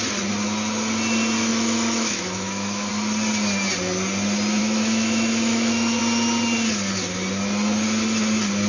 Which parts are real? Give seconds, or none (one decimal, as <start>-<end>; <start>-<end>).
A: 0.0-1.5; 2.9-4.6; 6.0-8.7